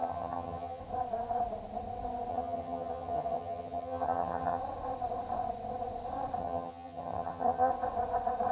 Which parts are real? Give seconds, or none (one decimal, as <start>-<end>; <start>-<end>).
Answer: 0.8-2.3; 4.6-6.4; 7.7-8.5